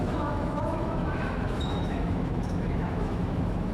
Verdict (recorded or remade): remade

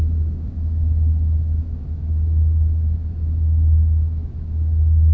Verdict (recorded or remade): remade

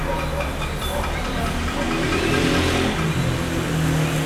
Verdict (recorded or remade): recorded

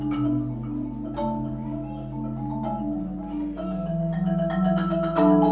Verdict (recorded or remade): recorded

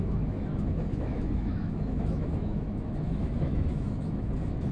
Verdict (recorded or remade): remade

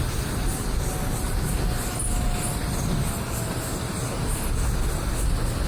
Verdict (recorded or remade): recorded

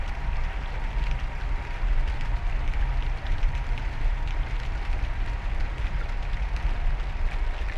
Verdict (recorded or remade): recorded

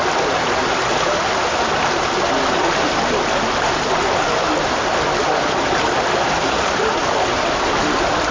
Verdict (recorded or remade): recorded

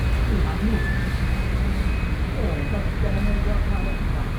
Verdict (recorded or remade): recorded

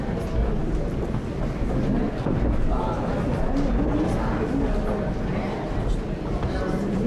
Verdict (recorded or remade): recorded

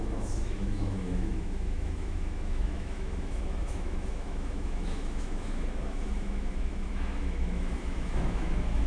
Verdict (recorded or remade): remade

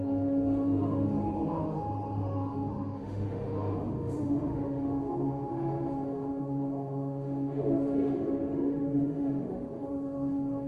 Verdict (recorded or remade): remade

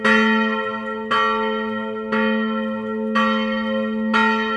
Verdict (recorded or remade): recorded